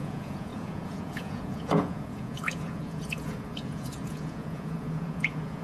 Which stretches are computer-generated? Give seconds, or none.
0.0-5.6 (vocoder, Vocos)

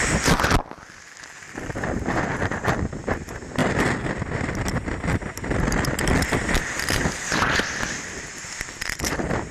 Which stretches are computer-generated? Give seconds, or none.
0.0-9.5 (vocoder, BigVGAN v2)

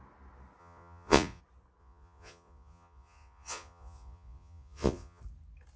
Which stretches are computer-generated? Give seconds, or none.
0.6-1.4 (vocoder, Vocos); 1.8-5.2